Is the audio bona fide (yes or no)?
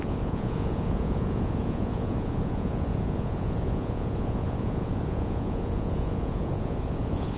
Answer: no